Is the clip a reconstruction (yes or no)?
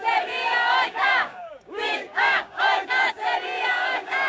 yes